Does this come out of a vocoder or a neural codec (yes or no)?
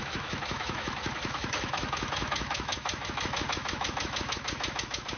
yes